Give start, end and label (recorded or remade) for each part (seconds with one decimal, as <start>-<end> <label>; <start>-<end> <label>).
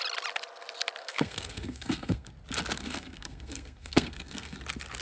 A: 0.0-1.0 recorded; 1.0-2.3 remade; 2.3-2.8 recorded; 2.8-4.6 remade; 4.6-5.0 recorded